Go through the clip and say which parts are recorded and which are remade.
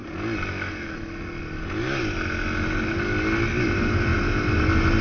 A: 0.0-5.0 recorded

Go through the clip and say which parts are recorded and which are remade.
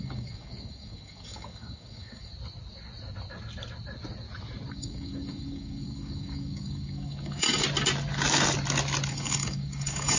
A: 0.0-2.3 remade; 2.3-4.7 recorded; 4.7-7.6 remade; 7.6-9.1 recorded; 9.1-10.2 remade